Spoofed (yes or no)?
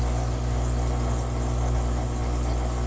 no